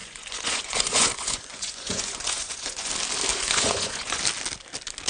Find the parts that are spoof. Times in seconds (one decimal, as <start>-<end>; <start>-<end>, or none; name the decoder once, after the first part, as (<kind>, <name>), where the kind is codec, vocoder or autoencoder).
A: 0.0-2.9 (vocoder, Vocos); 3.3-4.2